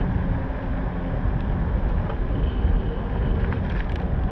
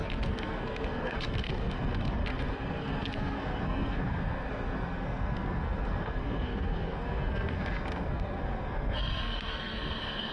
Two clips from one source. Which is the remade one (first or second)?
second